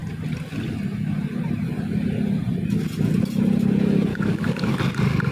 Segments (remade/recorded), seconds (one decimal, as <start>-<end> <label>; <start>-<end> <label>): 0.0-4.1 recorded; 4.1-4.8 remade; 4.8-5.3 recorded